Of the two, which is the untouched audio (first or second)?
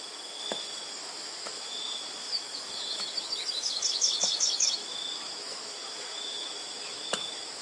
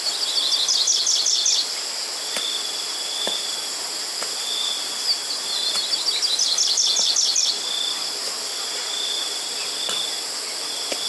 second